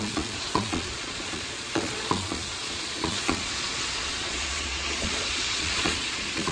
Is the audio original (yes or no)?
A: no